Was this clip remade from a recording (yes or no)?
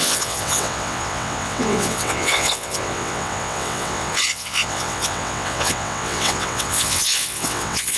yes